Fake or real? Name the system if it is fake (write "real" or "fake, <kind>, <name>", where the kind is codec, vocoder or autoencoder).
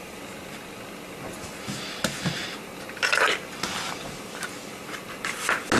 real